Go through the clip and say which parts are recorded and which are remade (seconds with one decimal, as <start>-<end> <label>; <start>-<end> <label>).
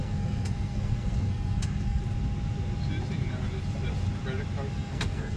0.0-2.0 remade; 2.0-4.7 recorded; 4.7-5.4 remade